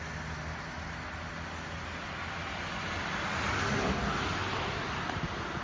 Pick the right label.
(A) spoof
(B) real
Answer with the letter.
B